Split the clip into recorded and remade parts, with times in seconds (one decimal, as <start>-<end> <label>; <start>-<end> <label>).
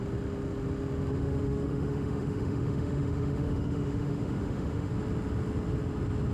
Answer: 0.0-1.1 recorded; 1.1-4.9 remade; 4.9-6.3 recorded